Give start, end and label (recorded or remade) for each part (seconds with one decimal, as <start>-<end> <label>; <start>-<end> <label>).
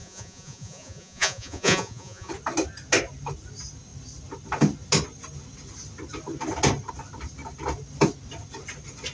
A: 0.0-2.3 remade; 2.3-9.1 recorded